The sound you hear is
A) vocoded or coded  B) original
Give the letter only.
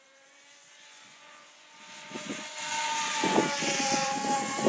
A